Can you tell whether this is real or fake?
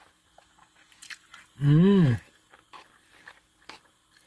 real